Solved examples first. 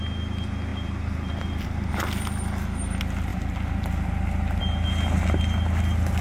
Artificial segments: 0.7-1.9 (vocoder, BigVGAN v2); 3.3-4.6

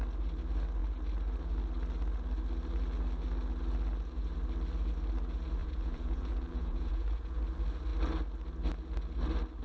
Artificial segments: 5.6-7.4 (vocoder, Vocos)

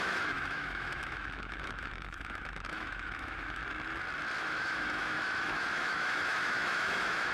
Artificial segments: 0.0-3.6 (autoencoder, DAC-VAE); 4.4-7.3

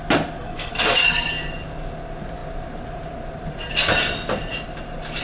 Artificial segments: 0.4-1.3 (codec, SNAC)